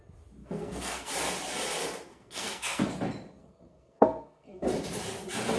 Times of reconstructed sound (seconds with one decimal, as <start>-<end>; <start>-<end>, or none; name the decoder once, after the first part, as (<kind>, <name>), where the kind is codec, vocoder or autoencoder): 0.4-1.1 (codec, SNAC); 2.1-2.9; 3.4-4.7